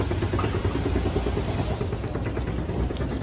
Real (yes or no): yes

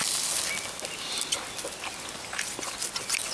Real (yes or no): yes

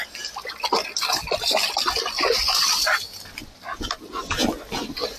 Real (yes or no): yes